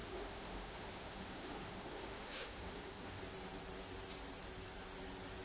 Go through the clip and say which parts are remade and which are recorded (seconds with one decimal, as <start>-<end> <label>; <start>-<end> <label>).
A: 0.0-3.2 remade; 3.2-5.4 recorded